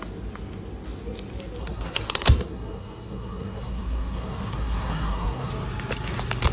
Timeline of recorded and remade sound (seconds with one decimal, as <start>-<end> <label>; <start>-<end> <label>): 0.0-1.6 recorded; 1.6-5.5 remade; 5.5-6.5 recorded